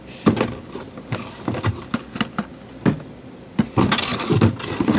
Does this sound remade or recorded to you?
recorded